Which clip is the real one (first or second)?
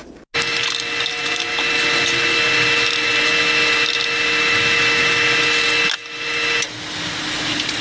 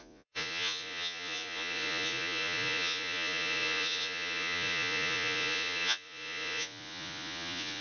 first